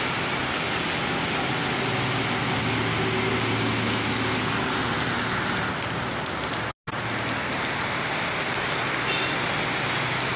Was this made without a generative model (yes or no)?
yes